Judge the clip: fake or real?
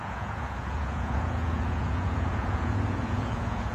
fake